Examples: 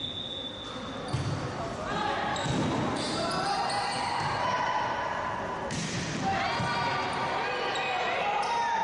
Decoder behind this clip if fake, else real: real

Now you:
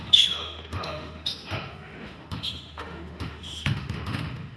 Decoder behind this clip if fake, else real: fake, autoencoder, DAC-VAE